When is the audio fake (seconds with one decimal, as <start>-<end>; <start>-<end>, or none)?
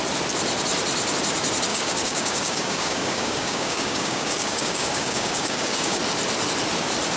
1.7-6.0